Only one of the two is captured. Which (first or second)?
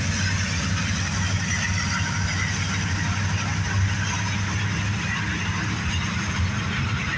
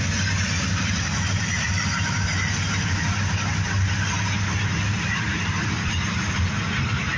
first